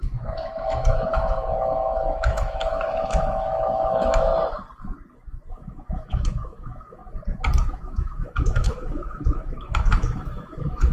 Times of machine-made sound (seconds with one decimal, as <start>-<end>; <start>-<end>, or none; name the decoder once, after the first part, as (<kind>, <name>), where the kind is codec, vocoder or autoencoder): 0.0-4.3 (autoencoder, DAC-VAE); 5.5-7.0; 7.7-10.9